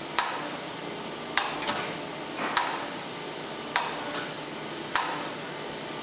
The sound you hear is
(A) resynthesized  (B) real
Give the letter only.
B